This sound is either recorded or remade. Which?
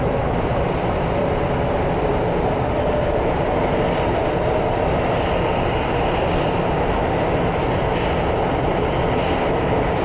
remade